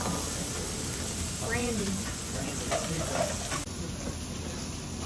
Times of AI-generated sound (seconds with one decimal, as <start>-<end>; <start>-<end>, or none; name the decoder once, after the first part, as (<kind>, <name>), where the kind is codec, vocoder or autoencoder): 1.6-3.1 (vocoder, Vocos)